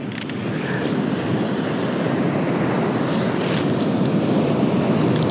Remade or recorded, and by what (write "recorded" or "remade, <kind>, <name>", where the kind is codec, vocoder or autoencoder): recorded